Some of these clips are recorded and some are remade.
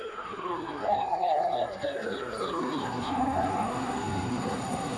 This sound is remade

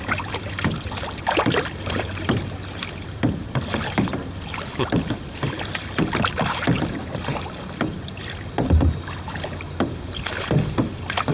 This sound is remade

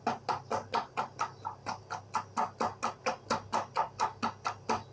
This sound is recorded